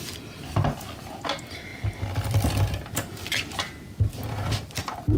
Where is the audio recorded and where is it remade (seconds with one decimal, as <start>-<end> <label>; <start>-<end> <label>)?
0.0-5.2 recorded